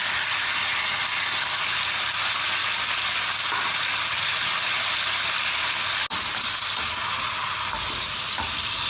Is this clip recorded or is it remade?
recorded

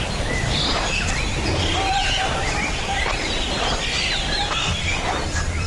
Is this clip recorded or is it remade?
recorded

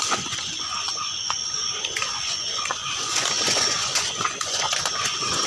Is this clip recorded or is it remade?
remade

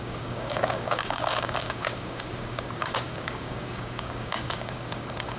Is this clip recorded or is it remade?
remade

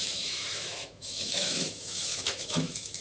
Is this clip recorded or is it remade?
remade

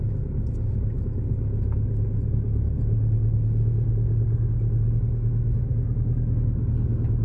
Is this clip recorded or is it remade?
recorded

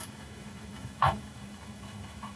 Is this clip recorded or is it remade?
remade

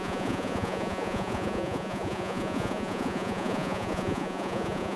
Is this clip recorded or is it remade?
remade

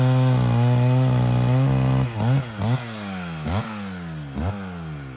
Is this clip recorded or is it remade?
recorded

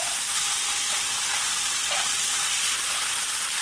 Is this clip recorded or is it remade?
recorded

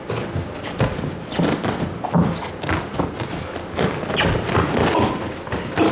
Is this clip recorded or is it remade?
recorded